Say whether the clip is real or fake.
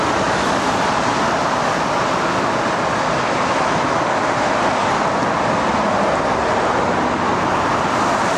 real